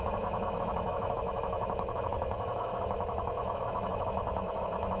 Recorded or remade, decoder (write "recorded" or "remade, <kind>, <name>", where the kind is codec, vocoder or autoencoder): remade, autoencoder, DAC-VAE